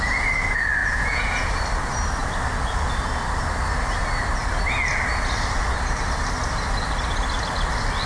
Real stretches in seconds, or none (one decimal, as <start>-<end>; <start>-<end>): 0.0-0.8; 1.5-8.1